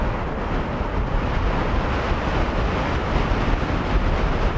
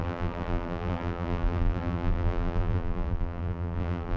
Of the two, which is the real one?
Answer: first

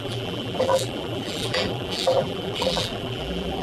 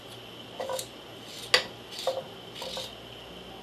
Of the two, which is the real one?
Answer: second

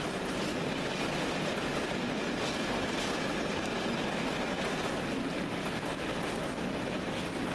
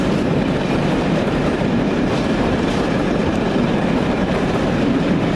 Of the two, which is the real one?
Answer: first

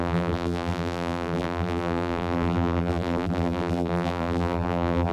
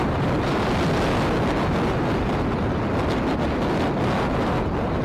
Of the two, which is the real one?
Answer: second